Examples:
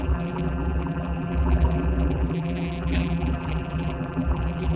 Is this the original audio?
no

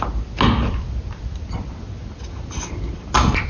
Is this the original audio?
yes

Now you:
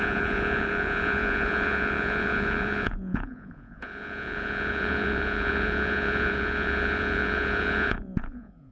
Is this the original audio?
no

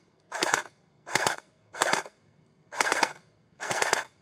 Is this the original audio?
no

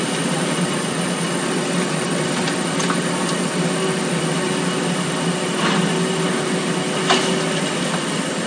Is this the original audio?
yes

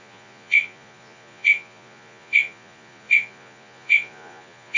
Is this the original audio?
no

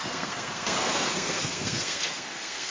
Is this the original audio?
no